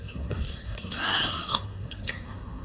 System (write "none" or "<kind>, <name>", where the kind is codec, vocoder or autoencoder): codec, SNAC